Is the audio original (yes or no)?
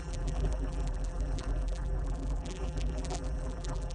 no